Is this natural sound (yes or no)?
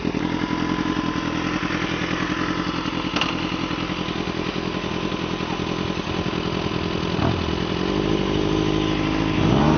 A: yes